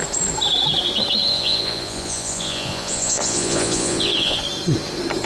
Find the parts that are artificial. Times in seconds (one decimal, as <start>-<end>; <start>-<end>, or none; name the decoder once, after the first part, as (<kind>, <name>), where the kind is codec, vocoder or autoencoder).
1.3-4.4 (vocoder, Vocos)